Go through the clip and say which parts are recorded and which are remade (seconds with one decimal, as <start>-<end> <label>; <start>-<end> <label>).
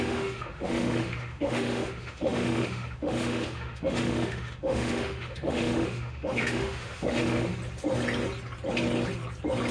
0.0-7.5 remade; 7.5-9.7 recorded